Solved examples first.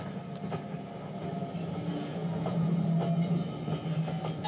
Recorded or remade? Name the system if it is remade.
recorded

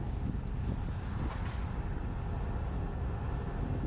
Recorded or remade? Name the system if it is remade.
recorded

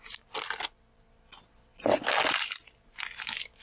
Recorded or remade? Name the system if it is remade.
recorded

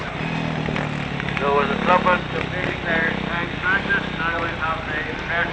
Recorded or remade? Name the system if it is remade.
recorded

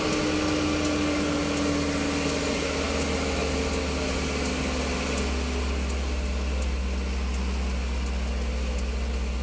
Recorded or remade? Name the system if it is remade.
recorded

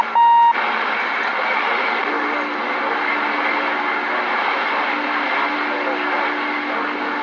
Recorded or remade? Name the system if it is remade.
recorded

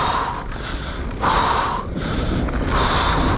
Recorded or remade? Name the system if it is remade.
recorded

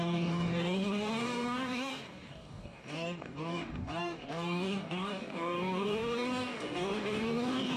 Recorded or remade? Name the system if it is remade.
remade, codec, DAC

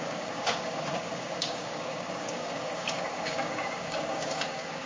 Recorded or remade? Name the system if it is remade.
remade, codec, DAC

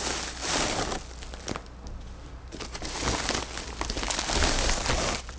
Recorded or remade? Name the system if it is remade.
recorded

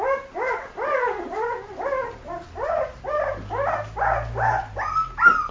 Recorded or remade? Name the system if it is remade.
recorded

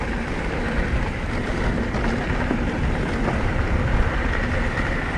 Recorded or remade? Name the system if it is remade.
recorded